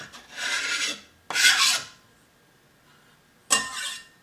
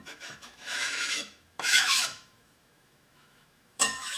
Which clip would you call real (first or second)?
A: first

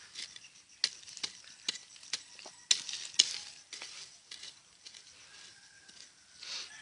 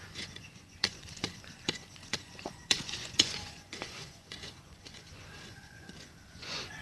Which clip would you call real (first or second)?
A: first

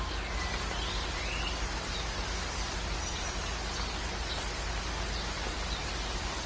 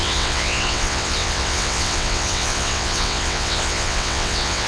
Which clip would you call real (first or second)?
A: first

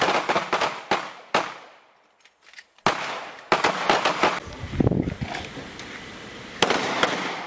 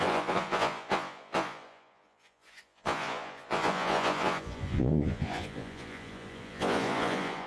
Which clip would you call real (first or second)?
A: first